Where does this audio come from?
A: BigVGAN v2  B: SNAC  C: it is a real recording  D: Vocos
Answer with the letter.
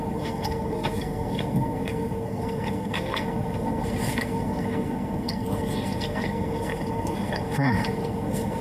B